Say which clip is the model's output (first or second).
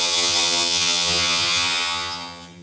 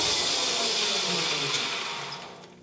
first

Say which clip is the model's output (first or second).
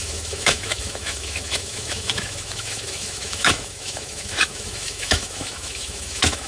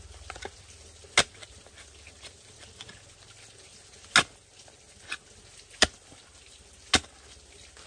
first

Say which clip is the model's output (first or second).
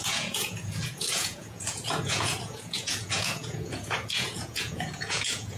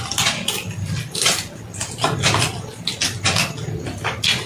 first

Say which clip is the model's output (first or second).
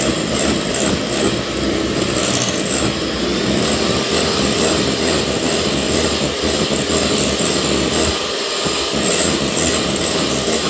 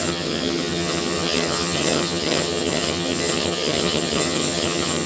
second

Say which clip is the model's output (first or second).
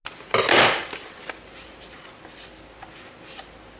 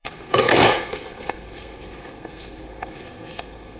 second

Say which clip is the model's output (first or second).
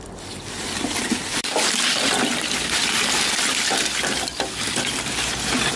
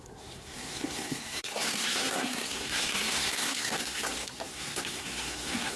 second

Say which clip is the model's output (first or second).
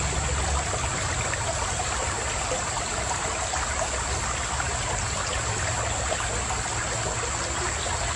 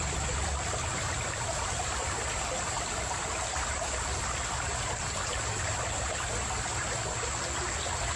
second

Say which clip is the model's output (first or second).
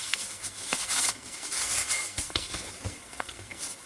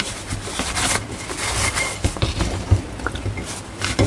first